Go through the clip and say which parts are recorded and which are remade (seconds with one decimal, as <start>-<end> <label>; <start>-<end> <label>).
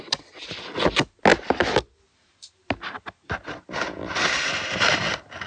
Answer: 0.0-5.5 recorded